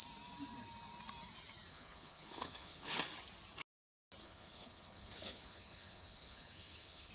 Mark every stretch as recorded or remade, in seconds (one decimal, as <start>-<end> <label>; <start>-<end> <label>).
0.0-1.7 recorded; 1.7-3.0 remade; 3.0-4.2 recorded; 4.2-7.1 remade